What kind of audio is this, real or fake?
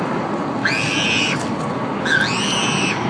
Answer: real